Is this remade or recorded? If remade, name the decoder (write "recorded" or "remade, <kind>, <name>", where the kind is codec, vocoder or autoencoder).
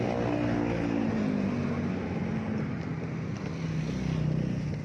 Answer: recorded